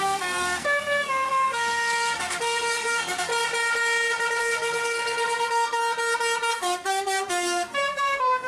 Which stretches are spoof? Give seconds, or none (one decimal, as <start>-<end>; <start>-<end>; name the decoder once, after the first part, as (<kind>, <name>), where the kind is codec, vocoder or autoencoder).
0.0-3.3 (codec, SNAC); 4.4-5.8; 6.5-8.5